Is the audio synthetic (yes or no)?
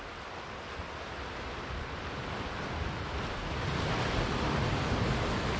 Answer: no